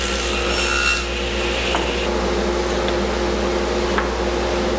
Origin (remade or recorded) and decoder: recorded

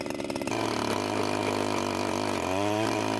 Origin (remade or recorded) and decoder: recorded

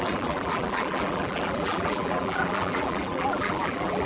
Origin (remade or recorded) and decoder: remade, vocoder, BigVGAN v2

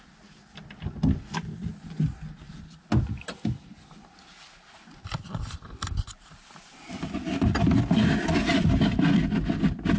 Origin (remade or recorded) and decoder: recorded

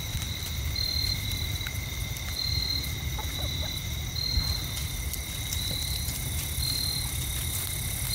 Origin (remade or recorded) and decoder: remade, vocoder, BigVGAN v2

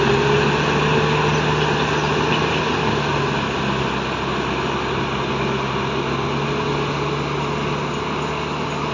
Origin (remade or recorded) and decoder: recorded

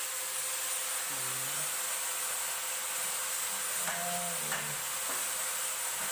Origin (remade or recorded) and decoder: recorded